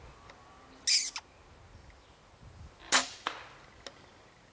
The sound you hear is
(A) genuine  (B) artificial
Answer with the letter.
A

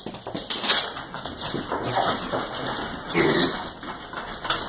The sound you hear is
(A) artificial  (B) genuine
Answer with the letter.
B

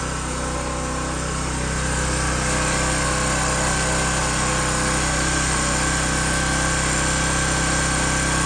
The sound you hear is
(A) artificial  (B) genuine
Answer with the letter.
B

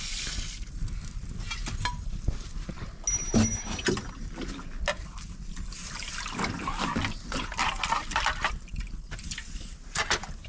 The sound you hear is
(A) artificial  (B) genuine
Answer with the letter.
B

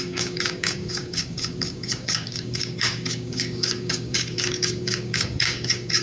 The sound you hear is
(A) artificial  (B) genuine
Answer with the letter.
A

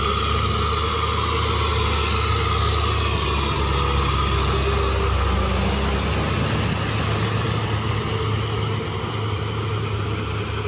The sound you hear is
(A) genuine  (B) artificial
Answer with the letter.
A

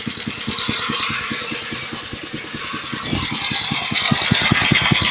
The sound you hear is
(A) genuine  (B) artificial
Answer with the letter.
A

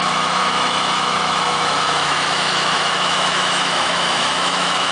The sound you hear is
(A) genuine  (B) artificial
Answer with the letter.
B